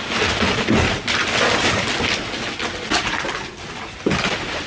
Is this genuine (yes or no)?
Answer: yes